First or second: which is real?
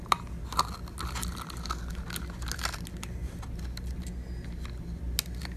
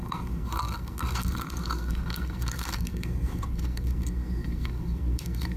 first